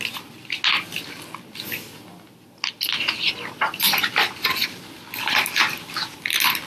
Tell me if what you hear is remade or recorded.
recorded